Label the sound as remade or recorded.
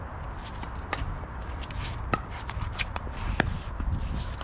recorded